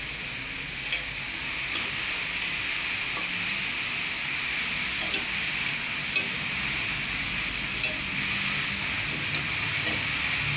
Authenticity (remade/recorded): recorded